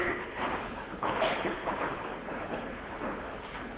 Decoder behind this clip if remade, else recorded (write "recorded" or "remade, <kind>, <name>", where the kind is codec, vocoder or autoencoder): remade, codec, HILCodec